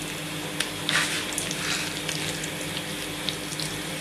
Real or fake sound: real